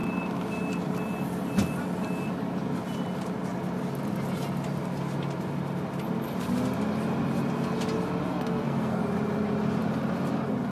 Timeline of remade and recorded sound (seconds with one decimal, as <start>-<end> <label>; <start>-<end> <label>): 0.0-8.3 recorded; 8.3-9.0 remade; 9.0-10.7 recorded